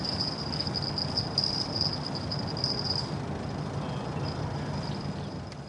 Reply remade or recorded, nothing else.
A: recorded